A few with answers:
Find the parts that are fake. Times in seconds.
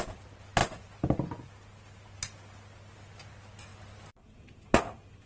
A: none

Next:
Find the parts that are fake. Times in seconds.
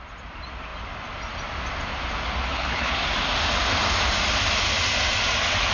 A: 2.5-3.0 (codec, HILCodec)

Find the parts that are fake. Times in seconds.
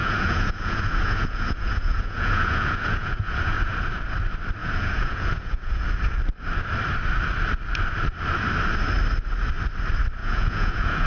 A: 0.0-3.7 (vocoder, Vocos); 4.6-5.8; 10.2-11.1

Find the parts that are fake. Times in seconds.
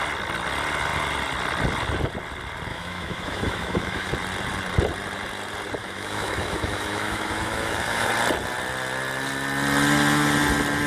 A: 2.7-4.1 (autoencoder, DAC-VAE); 5.8-8.1